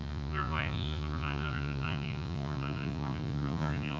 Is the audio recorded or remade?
remade